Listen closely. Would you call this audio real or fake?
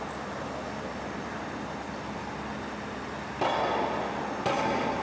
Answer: real